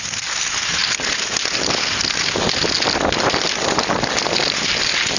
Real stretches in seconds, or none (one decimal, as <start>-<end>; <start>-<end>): 0.0-5.2